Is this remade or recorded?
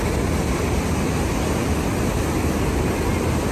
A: recorded